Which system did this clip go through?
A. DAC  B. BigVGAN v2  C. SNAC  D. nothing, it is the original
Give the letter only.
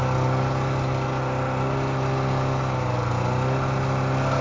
D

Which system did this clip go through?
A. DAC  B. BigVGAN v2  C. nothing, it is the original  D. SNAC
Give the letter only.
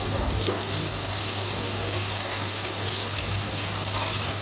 A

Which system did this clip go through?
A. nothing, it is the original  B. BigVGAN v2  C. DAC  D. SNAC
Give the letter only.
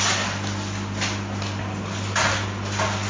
A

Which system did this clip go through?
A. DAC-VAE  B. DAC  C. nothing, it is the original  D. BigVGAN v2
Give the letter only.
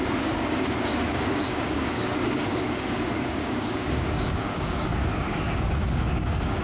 B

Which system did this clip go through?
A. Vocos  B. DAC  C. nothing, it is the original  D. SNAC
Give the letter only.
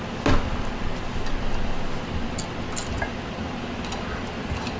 C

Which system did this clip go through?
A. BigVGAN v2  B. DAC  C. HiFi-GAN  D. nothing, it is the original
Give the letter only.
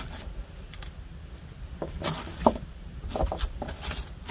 D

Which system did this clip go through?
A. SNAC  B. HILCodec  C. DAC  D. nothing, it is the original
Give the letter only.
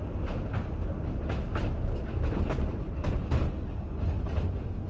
D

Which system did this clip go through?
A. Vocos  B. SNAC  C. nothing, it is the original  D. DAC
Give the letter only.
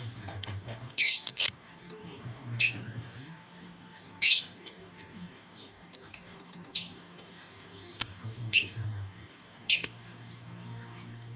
D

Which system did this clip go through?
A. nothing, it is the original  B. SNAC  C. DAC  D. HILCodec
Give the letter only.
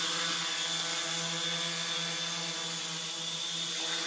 A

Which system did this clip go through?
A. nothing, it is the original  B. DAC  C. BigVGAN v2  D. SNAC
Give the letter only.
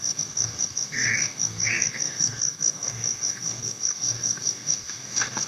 B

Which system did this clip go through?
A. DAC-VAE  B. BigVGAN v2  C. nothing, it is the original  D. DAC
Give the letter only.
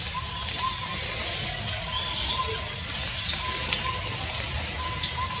C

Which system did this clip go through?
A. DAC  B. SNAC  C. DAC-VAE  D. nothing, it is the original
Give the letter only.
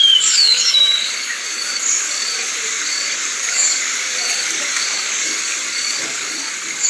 A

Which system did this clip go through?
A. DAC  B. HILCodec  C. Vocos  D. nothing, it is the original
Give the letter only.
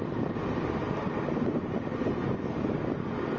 D